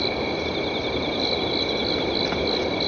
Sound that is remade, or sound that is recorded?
recorded